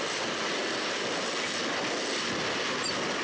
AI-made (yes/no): no